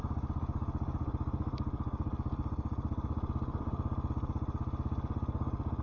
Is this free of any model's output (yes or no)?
yes